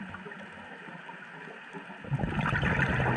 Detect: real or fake real